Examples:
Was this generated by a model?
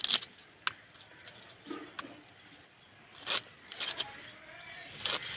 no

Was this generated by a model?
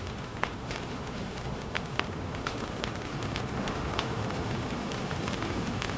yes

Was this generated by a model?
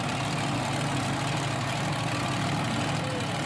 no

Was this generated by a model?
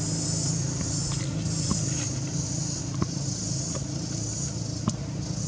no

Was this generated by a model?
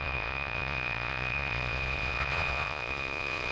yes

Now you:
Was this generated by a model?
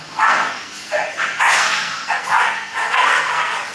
yes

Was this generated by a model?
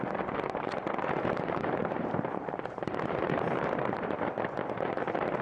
yes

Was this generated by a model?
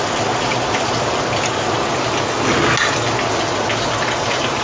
no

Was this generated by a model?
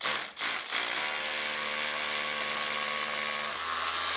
no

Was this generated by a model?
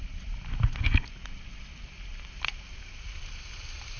no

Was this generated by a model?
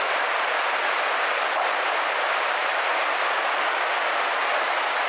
no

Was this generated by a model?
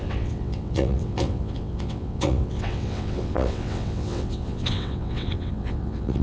yes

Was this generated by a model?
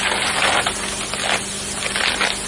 no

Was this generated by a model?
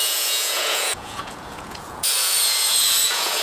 yes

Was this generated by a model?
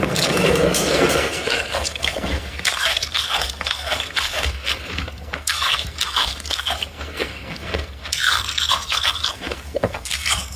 yes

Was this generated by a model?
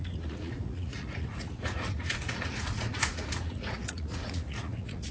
yes